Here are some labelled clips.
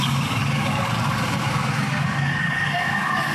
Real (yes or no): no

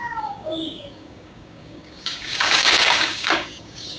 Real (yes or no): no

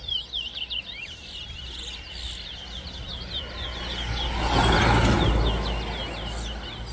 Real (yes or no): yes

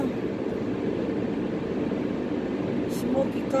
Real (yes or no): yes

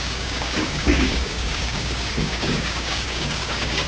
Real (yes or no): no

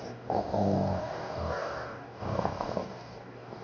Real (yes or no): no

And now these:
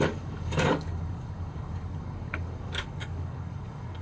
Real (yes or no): no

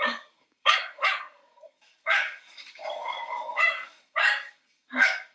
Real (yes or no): no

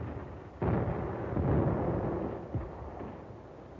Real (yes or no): yes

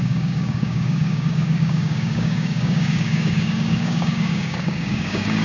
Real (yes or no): no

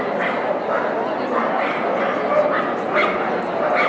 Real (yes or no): yes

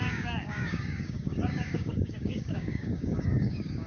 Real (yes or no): no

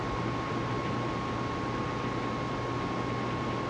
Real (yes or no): yes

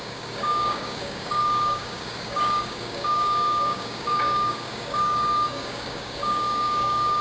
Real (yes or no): no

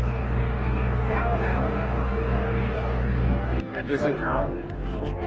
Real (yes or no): no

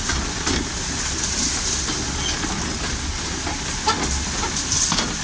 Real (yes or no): yes